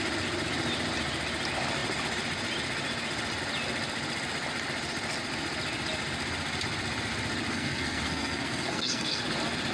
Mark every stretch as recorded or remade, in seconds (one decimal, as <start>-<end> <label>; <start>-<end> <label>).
0.0-7.5 recorded; 7.5-9.2 remade; 9.2-9.7 recorded